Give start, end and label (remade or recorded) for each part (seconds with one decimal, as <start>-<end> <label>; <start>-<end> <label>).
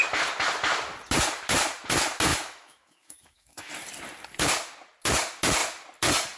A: 0.0-2.3 recorded; 2.3-3.7 remade; 3.7-6.4 recorded